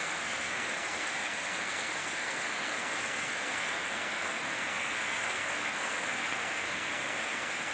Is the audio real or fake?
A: fake